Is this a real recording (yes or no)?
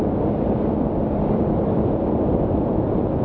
no